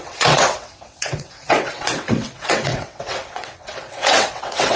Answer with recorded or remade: remade